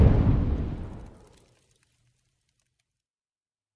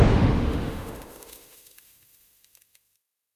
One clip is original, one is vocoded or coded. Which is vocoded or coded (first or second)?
second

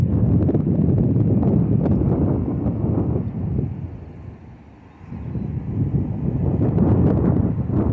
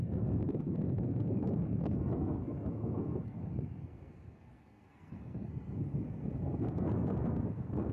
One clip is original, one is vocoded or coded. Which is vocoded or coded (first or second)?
second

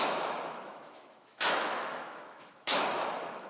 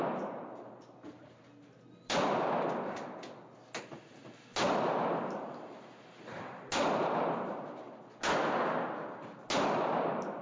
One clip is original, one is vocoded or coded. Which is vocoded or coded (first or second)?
first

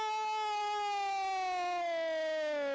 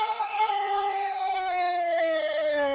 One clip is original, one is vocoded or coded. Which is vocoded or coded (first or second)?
second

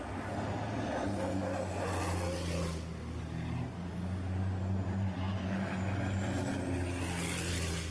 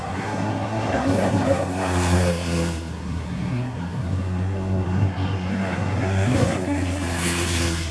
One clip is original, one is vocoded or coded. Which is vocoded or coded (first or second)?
second